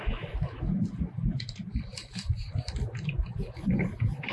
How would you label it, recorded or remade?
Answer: recorded